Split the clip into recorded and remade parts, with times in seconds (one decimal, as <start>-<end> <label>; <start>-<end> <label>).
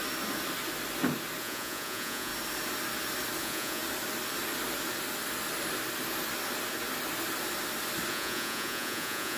0.0-1.4 recorded; 1.4-2.3 remade; 2.3-3.4 recorded; 3.4-3.8 remade; 3.8-8.1 recorded; 8.1-9.4 remade